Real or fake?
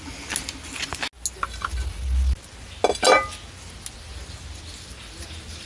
real